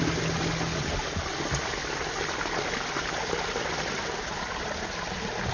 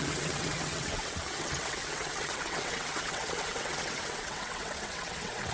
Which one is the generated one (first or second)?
second